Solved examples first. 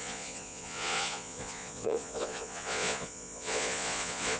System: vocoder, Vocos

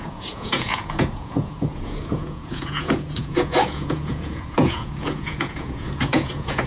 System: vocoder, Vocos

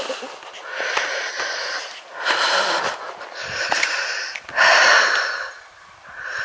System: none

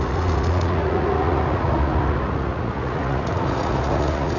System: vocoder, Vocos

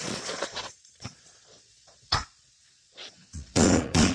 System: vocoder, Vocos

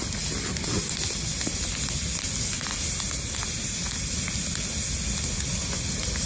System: none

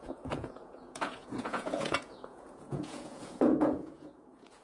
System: vocoder, Vocos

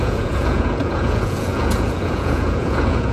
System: vocoder, Vocos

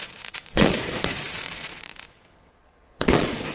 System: vocoder, Vocos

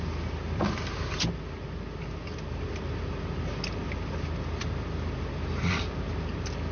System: none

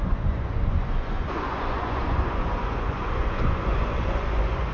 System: vocoder, Vocos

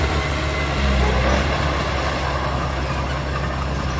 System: none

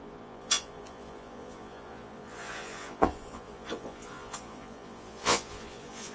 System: vocoder, Vocos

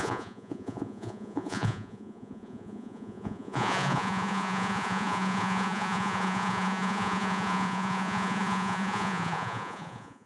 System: vocoder, Vocos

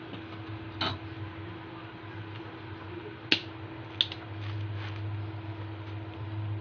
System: none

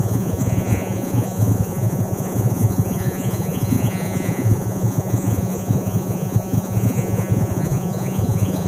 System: vocoder, Vocos